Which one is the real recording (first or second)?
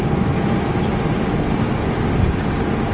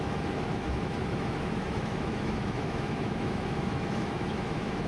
first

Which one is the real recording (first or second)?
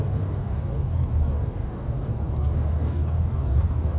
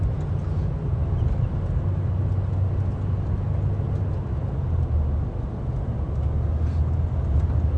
second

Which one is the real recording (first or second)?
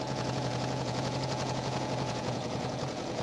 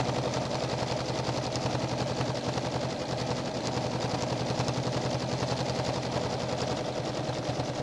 second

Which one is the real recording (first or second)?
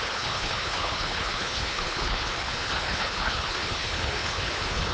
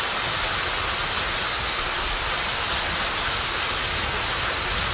second